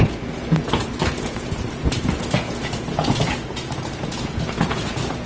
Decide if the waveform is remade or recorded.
remade